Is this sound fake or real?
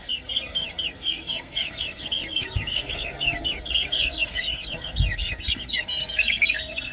fake